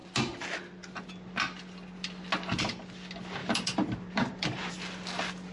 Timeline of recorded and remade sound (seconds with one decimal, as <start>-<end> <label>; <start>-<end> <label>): 0.0-3.4 recorded; 3.4-4.7 remade; 4.7-5.5 recorded